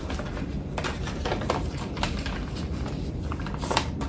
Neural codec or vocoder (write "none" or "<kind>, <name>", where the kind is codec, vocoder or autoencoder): vocoder, BigVGAN v2